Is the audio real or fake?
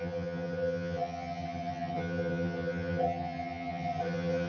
fake